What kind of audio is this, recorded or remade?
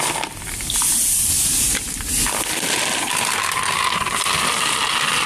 recorded